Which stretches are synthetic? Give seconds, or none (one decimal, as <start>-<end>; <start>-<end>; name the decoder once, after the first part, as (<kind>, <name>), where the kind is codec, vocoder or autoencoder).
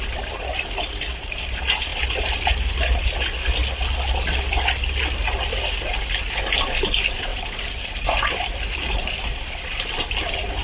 7.3-8.2 (vocoder, BigVGAN v2)